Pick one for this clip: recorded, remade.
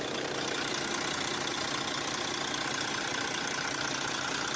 recorded